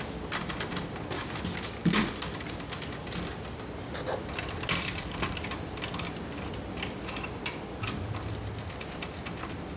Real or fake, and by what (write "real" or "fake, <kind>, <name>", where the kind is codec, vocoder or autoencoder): real